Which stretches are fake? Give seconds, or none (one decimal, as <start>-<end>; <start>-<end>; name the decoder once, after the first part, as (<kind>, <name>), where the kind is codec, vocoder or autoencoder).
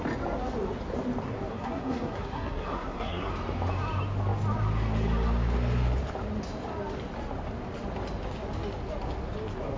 1.5-3.3 (codec, SNAC)